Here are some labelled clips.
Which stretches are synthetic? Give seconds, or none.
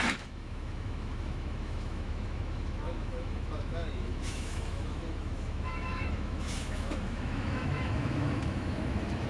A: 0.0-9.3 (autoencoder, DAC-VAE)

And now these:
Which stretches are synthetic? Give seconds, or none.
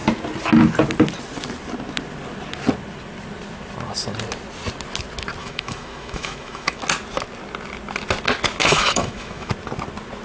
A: 5.4-6.8 (autoencoder, DAC-VAE); 8.6-9.5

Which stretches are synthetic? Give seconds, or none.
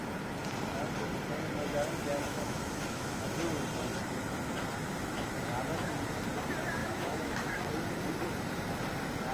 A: 2.3-3.2 (autoencoder, DAC-VAE); 6.8-7.6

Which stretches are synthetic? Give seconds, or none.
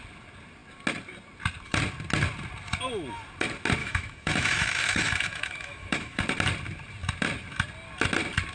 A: 3.8-6.2 (autoencoder, DAC-VAE)